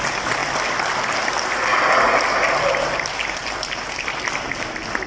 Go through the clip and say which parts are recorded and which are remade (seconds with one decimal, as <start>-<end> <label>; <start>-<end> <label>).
0.0-5.1 recorded